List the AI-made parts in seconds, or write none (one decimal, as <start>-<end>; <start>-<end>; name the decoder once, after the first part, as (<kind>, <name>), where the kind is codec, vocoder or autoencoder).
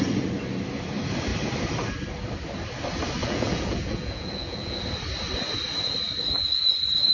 3.2-4.8 (vocoder, Vocos)